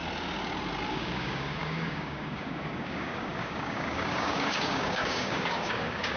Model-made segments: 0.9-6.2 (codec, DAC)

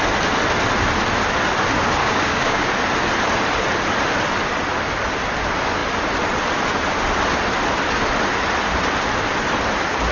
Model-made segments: 2.0-2.7 (codec, DAC)